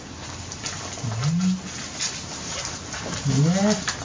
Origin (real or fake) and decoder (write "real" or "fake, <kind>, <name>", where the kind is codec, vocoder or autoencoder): real